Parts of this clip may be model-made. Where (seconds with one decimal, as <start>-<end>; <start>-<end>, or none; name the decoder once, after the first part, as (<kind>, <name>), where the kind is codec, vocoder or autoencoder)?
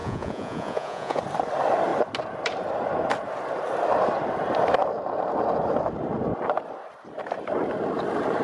0.0-1.2 (vocoder, Vocos)